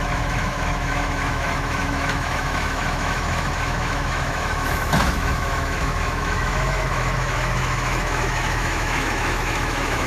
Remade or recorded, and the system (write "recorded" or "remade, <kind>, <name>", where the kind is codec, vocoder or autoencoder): remade, autoencoder, DAC-VAE